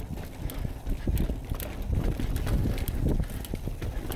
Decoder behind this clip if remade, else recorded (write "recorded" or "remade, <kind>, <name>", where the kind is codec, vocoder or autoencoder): recorded